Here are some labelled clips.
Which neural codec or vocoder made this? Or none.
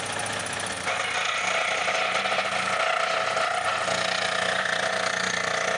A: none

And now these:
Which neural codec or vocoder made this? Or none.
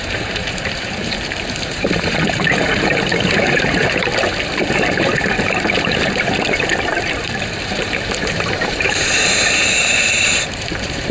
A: vocoder, BigVGAN v2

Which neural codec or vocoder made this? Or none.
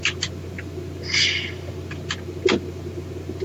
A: none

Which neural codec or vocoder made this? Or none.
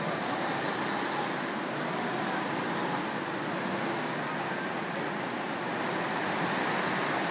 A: none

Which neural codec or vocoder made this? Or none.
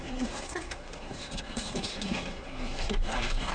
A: codec, SNAC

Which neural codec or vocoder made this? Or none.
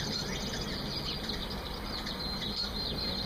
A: vocoder, BigVGAN v2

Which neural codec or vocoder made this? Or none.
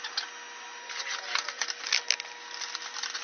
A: none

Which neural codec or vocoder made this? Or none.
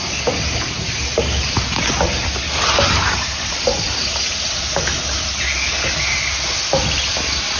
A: none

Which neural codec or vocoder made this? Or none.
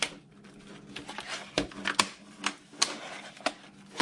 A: none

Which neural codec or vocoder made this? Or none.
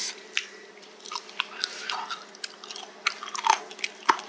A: none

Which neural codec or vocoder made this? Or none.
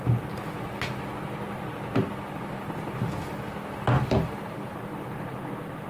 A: none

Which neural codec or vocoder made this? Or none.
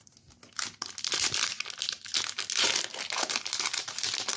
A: none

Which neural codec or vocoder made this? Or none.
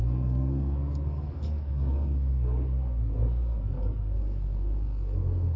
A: codec, SNAC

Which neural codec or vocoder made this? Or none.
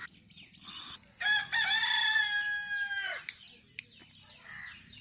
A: none